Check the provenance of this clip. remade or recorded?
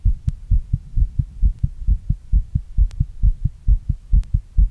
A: recorded